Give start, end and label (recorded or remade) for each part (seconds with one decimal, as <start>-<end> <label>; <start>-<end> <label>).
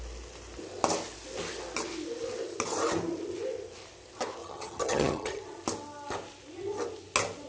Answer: 0.0-4.4 recorded; 4.4-5.4 remade; 5.4-7.5 recorded